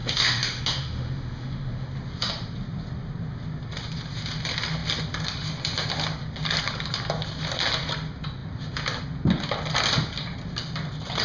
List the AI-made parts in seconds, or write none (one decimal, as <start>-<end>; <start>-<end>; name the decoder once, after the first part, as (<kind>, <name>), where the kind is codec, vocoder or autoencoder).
0.0-1.9 (autoencoder, DAC-VAE)